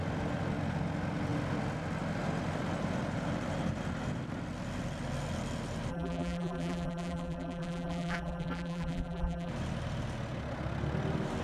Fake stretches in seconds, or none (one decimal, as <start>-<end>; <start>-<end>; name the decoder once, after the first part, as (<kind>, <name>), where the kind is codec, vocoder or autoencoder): 5.9-9.5 (vocoder, BigVGAN v2)